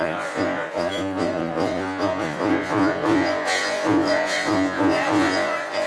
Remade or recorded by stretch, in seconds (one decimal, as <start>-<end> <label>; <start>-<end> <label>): 0.0-5.9 remade